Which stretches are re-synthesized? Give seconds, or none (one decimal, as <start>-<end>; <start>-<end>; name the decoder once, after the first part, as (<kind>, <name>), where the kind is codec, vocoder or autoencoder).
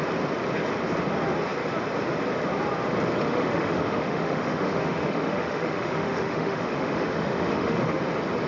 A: 3.2-8.0 (autoencoder, DAC-VAE)